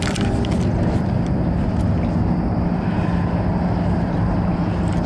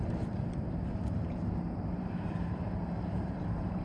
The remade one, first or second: second